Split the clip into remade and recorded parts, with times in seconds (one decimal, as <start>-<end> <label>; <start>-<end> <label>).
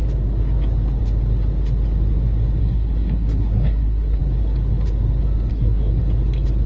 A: 0.0-2.6 recorded; 2.6-4.2 remade; 4.2-5.5 recorded; 5.5-6.0 remade; 6.0-6.7 recorded